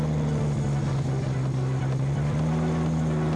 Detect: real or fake real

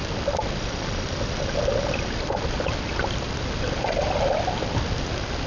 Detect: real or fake real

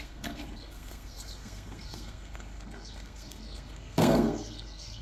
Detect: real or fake fake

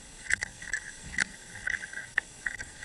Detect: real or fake fake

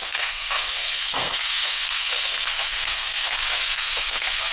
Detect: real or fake fake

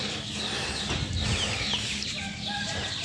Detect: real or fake real